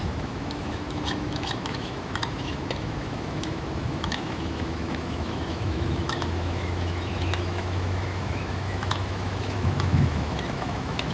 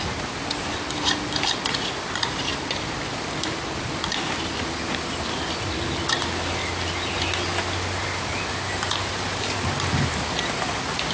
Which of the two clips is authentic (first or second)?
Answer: second